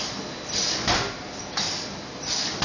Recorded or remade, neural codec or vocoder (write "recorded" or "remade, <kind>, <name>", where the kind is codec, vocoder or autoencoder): recorded